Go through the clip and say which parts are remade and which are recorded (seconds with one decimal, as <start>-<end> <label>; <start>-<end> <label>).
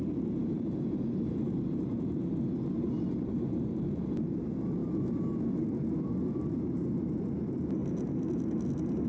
0.0-9.1 recorded